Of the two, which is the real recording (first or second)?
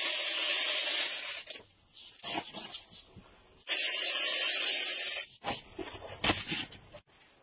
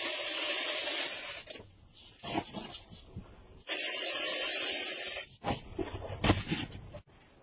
first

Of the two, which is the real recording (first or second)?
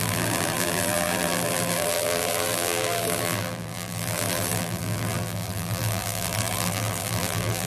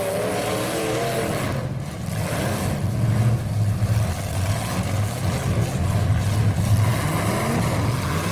second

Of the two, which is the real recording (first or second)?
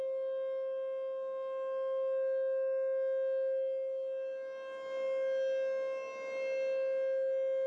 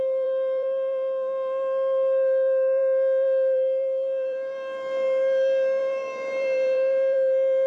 first